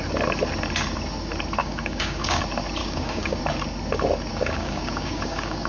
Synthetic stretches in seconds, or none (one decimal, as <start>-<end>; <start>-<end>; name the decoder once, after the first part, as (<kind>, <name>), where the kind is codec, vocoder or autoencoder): 1.6-2.4 (codec, DAC); 2.8-3.4; 4.3-5.7